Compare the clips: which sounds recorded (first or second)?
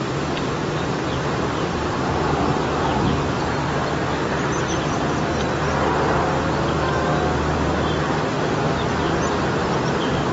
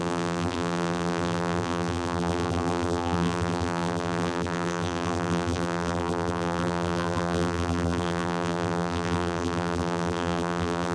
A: first